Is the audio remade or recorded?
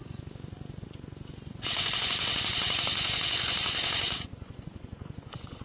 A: remade